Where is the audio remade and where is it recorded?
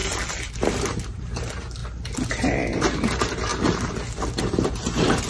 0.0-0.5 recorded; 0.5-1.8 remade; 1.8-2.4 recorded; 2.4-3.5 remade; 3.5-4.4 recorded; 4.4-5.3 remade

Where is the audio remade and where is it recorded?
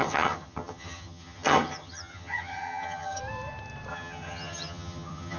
0.0-3.2 remade; 3.2-3.9 recorded; 3.9-5.4 remade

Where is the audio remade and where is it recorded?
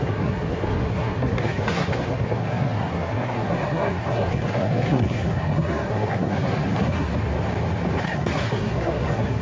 0.0-7.1 remade; 7.1-8.0 recorded; 8.0-9.4 remade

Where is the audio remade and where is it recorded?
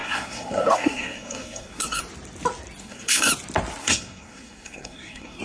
0.0-2.0 remade; 2.0-2.8 recorded; 2.8-3.3 remade; 3.3-3.8 recorded; 3.8-5.4 remade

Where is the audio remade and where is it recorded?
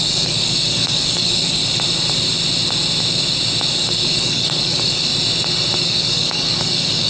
0.0-1.6 remade; 1.6-3.7 recorded; 3.7-5.1 remade; 5.1-5.8 recorded; 5.8-7.1 remade